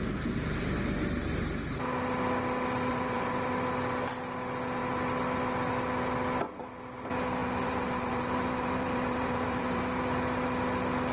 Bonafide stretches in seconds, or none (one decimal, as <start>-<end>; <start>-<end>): 0.0-2.9; 3.5-7.4; 9.8-11.1